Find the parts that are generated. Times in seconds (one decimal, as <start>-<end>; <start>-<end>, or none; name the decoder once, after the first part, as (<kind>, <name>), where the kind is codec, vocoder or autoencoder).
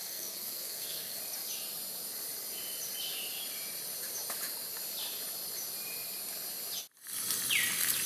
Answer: 0.0-1.2 (codec, SNAC)